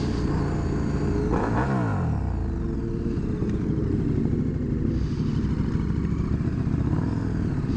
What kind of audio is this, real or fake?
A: real